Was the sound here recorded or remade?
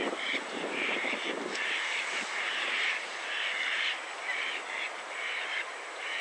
remade